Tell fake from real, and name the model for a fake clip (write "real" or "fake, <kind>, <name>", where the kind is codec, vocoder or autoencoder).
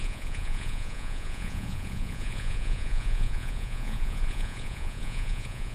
fake, vocoder, Vocos